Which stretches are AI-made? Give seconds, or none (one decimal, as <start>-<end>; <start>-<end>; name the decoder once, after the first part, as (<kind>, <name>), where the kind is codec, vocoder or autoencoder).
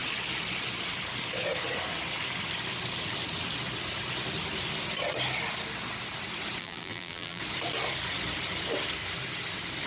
6.6-7.4 (vocoder, BigVGAN v2)